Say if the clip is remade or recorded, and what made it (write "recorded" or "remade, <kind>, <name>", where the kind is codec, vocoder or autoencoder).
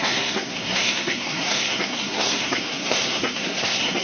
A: remade, codec, SNAC